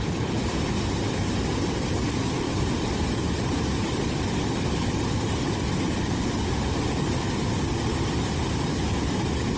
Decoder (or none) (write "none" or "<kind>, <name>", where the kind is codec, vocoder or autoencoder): none